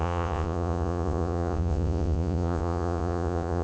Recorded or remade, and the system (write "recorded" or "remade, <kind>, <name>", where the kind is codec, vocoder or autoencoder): remade, vocoder, Vocos